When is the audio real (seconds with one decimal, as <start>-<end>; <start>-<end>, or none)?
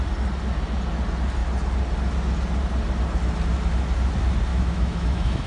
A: 0.0-4.5